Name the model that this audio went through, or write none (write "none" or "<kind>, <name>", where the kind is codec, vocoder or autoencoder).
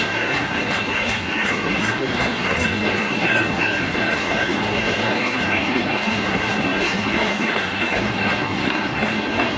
codec, SNAC